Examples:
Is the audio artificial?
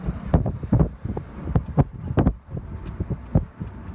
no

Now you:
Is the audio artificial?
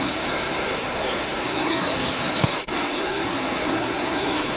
yes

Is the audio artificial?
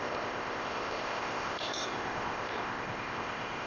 yes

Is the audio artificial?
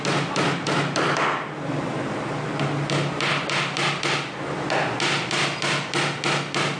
no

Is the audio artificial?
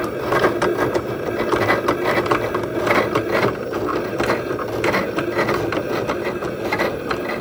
no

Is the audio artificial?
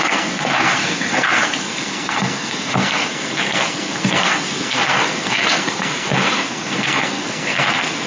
yes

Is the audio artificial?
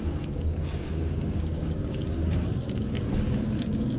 yes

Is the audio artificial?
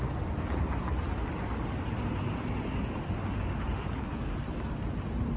no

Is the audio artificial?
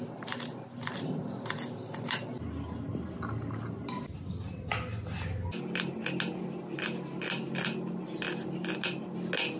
no